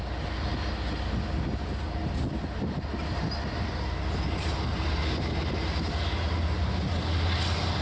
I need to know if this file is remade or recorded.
recorded